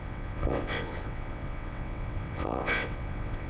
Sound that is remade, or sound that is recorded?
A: remade